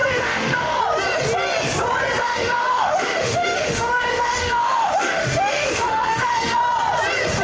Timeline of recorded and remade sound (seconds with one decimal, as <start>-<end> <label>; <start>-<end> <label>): 0.0-0.8 remade; 0.8-2.2 recorded; 2.2-6.6 remade; 6.6-7.4 recorded